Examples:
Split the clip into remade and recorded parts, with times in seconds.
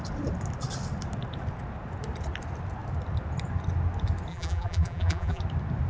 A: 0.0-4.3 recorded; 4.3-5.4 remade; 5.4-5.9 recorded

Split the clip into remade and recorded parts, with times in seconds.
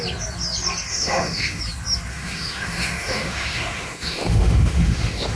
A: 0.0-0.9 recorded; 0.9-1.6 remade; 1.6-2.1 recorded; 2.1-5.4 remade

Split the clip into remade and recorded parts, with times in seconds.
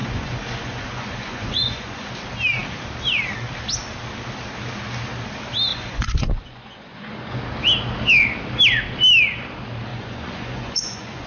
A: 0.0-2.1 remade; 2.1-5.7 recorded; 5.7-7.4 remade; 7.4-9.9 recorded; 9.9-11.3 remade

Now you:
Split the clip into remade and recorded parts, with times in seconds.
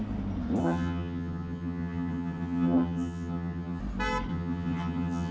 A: 0.0-0.6 recorded; 0.6-3.8 remade; 3.8-4.3 recorded; 4.3-5.3 remade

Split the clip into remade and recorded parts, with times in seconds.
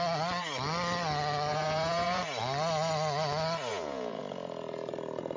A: 0.0-1.5 recorded; 1.5-2.2 remade; 2.2-3.7 recorded; 3.7-4.2 remade; 4.2-5.4 recorded